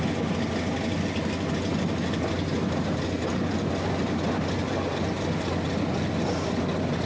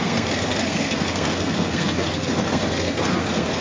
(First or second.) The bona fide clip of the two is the first